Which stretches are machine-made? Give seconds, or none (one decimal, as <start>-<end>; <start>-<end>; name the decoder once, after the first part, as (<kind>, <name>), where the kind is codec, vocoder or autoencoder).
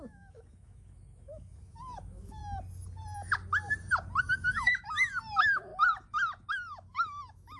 0.0-2.4 (autoencoder, DAC-VAE); 4.2-5.7; 6.5-7.6